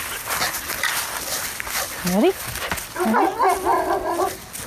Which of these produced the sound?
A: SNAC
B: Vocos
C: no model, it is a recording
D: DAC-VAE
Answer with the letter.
C